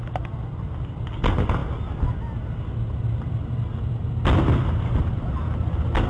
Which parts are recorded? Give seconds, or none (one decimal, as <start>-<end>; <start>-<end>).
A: 0.0-6.1